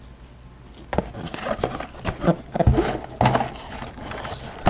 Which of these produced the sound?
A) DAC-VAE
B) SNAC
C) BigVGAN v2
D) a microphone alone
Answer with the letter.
D